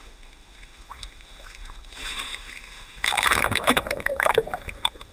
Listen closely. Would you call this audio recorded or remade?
remade